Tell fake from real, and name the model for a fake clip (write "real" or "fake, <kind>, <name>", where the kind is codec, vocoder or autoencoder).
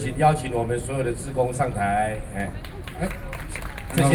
real